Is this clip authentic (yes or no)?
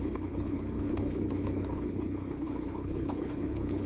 no